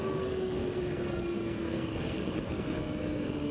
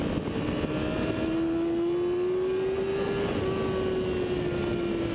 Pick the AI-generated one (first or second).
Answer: first